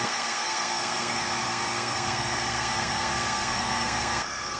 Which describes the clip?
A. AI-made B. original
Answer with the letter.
A